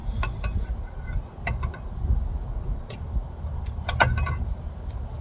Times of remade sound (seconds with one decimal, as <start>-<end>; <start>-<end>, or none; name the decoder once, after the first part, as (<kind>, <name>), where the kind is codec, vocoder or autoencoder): none